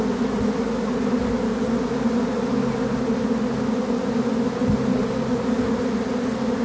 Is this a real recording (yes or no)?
yes